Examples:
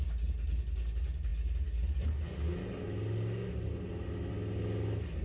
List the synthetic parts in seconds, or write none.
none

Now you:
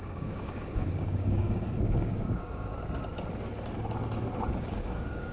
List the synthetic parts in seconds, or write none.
0.0-2.7 (codec, DAC); 4.5-5.3

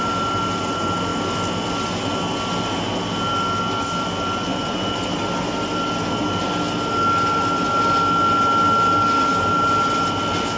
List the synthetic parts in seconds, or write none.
4.5-5.2 (vocoder, BigVGAN v2); 9.3-9.9